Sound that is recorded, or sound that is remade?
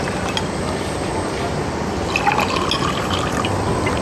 recorded